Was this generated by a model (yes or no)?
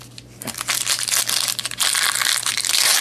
no